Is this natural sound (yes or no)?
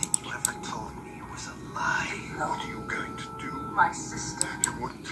yes